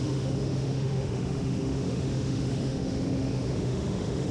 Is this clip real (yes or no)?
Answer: no